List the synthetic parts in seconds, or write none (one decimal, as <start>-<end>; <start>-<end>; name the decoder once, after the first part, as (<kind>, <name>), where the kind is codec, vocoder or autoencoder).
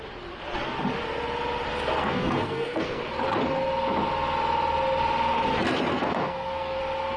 2.0-3.0 (codec, SNAC); 5.9-6.8